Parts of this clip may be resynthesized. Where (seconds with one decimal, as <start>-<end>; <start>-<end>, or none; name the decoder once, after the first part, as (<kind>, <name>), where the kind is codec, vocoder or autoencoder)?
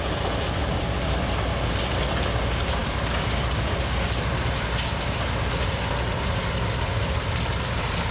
0.0-8.1 (vocoder, BigVGAN v2)